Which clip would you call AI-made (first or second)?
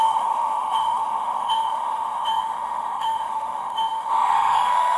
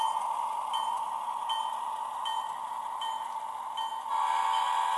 first